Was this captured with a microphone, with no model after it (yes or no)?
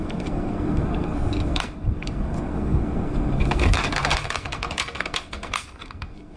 no